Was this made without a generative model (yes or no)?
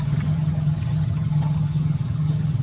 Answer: no